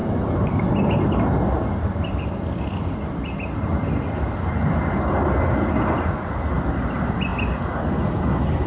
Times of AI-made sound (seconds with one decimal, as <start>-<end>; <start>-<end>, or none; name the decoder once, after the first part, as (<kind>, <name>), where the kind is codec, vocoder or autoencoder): none